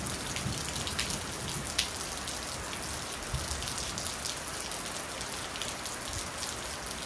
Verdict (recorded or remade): recorded